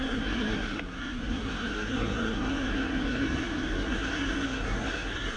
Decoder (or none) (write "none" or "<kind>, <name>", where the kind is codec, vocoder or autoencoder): codec, SNAC